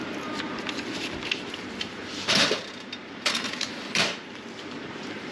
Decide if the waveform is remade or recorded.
remade